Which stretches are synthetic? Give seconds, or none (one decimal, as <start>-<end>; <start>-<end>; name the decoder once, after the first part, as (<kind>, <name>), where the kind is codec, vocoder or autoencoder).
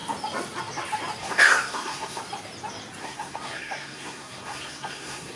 1.2-2.2 (codec, SNAC); 3.0-5.4